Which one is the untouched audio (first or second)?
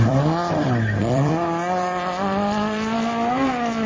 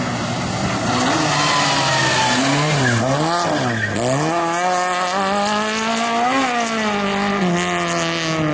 second